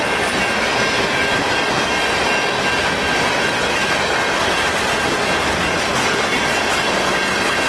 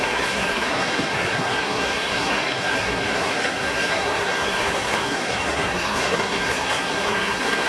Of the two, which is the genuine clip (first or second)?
first